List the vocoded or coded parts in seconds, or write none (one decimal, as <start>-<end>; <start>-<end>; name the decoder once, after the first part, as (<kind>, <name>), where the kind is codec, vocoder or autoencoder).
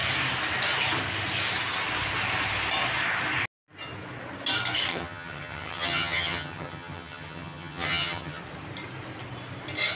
4.9-8.4 (vocoder, HiFi-GAN)